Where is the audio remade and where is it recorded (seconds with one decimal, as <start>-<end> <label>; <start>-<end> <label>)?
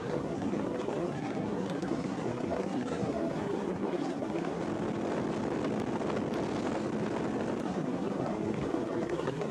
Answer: 0.0-4.6 remade; 4.6-7.6 recorded; 7.6-9.5 remade